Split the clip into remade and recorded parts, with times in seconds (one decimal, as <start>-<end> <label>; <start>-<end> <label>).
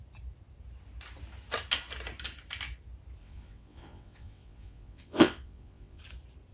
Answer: 0.0-3.2 recorded; 3.2-6.0 remade; 6.0-6.5 recorded